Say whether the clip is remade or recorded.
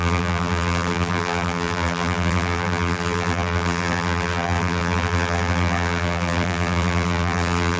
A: remade